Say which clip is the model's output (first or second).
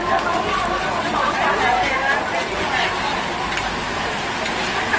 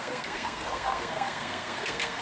second